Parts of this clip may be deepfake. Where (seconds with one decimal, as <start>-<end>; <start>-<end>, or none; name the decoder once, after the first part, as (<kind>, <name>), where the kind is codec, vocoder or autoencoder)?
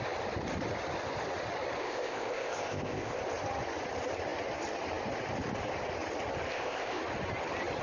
1.8-3.2 (codec, ZipCodec); 6.5-7.0